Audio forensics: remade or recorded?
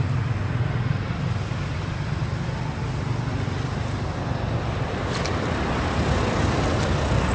recorded